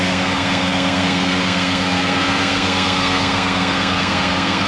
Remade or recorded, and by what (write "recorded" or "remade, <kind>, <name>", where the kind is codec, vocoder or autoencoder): remade, codec, SNAC